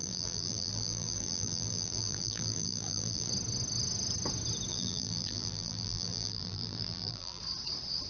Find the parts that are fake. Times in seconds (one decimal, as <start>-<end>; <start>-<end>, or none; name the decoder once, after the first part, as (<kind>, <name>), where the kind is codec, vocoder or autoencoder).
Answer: 0.0-3.3 (vocoder, BigVGAN v2); 4.7-7.4

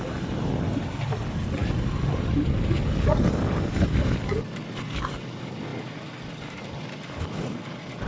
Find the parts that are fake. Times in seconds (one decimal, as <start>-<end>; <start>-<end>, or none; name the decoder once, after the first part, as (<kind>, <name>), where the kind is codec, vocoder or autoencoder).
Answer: none

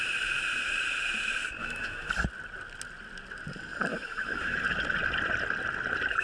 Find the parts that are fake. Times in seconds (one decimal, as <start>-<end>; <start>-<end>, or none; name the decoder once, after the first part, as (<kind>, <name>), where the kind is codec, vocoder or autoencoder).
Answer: 1.6-2.1 (autoencoder, DAC-VAE); 3.9-4.6

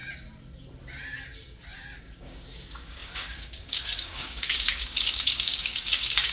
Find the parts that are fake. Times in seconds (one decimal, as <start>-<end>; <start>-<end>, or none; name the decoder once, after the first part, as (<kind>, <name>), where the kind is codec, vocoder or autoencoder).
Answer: 2.0-6.3 (codec, DAC)

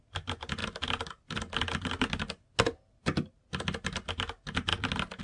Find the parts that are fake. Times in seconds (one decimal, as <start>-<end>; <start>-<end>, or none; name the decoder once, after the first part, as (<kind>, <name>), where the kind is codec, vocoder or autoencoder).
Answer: none

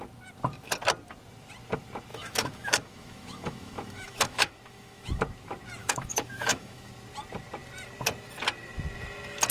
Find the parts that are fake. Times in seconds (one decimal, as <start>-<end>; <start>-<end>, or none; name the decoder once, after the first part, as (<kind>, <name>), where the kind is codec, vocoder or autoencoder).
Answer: 2.1-5.2 (autoencoder, DAC-VAE); 5.8-6.9

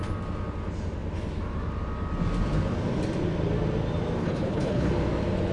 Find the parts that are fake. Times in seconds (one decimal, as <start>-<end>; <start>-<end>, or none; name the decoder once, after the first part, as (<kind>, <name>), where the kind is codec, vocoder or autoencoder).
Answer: 4.2-4.9 (codec, HILCodec)